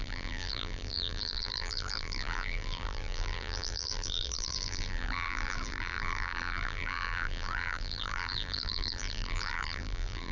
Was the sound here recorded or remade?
remade